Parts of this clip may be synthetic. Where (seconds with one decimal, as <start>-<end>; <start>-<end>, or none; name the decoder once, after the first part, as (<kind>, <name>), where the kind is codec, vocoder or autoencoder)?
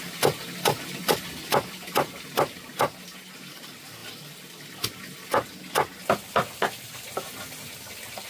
none